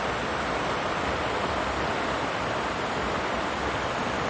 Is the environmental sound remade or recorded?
recorded